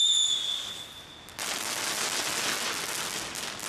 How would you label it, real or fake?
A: real